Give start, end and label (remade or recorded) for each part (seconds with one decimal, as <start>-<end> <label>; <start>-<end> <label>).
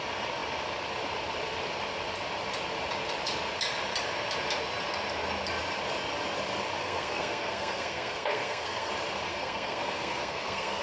0.0-6.8 recorded; 6.8-8.9 remade; 8.9-9.3 recorded; 9.3-10.8 remade